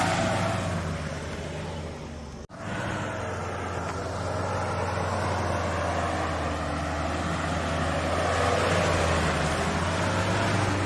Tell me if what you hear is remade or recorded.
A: recorded